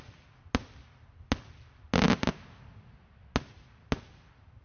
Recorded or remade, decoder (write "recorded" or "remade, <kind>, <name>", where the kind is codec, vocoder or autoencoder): recorded